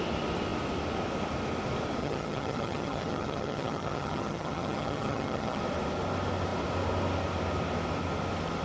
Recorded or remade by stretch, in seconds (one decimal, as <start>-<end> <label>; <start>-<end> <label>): 0.0-2.0 recorded; 2.0-5.6 remade; 5.6-8.6 recorded